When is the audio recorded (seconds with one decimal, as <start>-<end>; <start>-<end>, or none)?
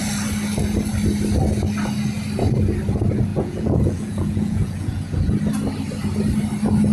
0.0-3.3; 5.4-6.9